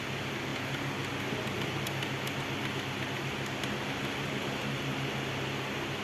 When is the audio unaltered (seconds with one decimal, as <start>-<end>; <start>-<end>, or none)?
0.0-6.0